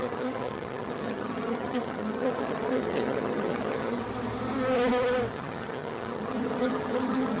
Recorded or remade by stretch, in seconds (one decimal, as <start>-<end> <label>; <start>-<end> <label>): 0.0-4.0 remade; 4.0-5.3 recorded; 5.3-7.4 remade